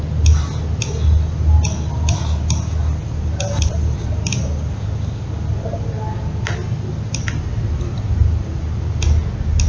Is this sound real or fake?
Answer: real